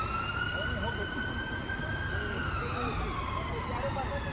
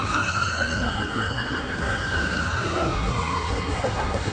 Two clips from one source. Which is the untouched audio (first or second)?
first